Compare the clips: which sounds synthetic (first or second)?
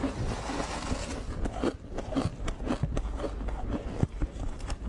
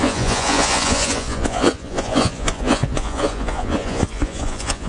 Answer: second